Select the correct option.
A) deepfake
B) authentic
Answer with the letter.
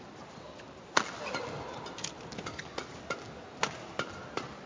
B